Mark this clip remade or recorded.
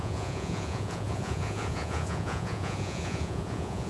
remade